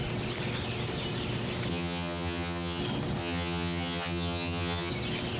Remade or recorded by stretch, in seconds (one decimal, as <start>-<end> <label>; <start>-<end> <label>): 0.0-1.7 recorded; 1.7-2.8 remade; 2.8-3.2 recorded; 3.2-4.9 remade; 4.9-5.4 recorded